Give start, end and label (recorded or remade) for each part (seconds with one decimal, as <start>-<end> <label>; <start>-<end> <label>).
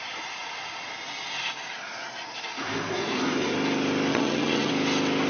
0.0-4.1 recorded; 4.1-4.7 remade; 4.7-5.3 recorded